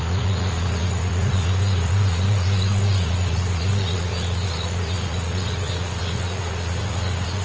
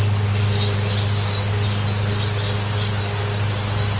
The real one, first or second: second